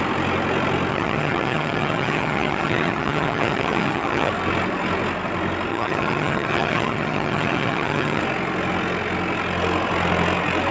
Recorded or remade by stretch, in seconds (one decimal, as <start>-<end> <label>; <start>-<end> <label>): 0.0-0.9 recorded; 0.9-4.3 remade; 4.3-5.7 recorded; 5.7-8.2 remade; 8.2-10.7 recorded

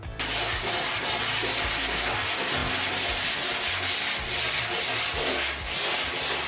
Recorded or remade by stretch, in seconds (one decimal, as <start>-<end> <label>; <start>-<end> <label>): 0.0-6.5 recorded

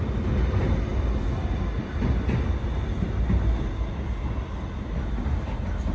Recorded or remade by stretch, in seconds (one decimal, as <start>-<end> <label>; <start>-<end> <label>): 0.0-5.9 recorded